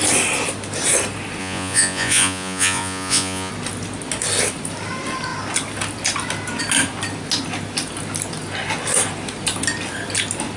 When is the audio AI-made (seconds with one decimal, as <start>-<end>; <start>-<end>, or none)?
1.4-3.5